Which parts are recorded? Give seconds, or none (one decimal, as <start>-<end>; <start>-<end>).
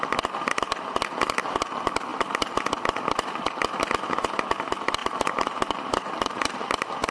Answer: 0.0-5.0